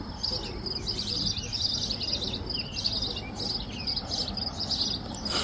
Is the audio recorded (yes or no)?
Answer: yes